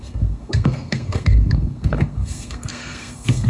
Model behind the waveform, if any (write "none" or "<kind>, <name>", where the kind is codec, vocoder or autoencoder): codec, SNAC